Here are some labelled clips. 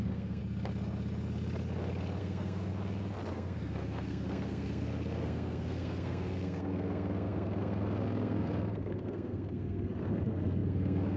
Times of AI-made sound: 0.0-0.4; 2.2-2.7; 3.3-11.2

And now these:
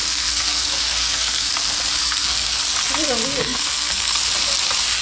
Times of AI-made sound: 0.0-1.5; 2.0-2.6; 3.4-4.2

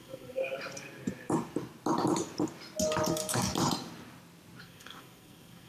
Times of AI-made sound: 0.0-0.4; 3.1-3.5; 4.6-5.7

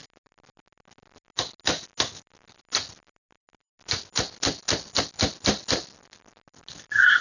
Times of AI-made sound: none

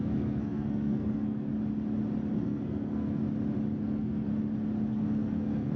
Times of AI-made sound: 0.0-1.5; 2.3-3.2; 3.8-4.3; 4.9-5.8

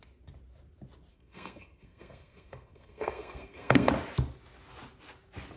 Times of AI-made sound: 1.1-3.9

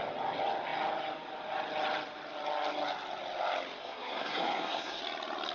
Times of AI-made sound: 3.8-5.0